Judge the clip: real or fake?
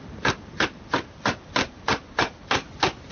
real